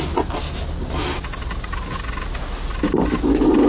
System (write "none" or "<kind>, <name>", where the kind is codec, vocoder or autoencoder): none